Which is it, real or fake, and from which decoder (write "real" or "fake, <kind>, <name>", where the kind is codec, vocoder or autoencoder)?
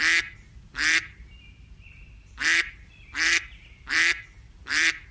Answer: fake, vocoder, BigVGAN v2